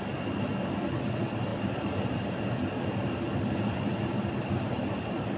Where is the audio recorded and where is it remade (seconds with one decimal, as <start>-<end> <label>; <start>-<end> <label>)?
0.0-1.5 recorded; 1.5-2.4 remade; 2.4-5.4 recorded